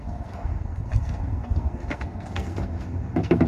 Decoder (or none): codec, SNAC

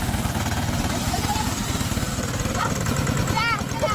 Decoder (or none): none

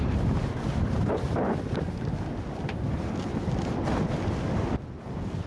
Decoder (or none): none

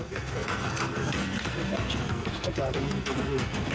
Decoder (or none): codec, SNAC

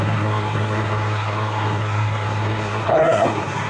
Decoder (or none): codec, SNAC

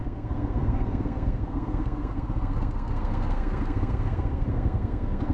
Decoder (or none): codec, SNAC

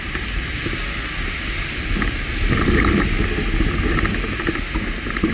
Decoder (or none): none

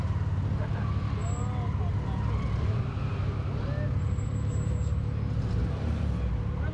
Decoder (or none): none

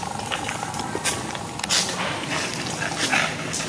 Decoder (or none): none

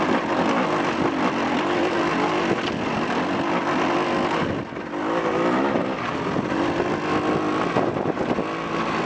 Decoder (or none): none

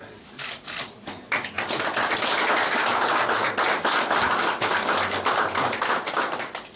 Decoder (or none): none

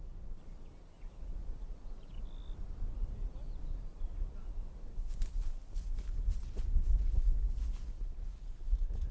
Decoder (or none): none